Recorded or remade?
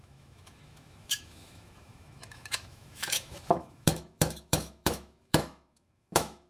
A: remade